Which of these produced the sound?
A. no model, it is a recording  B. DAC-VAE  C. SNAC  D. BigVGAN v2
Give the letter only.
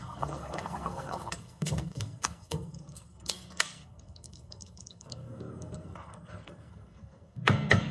C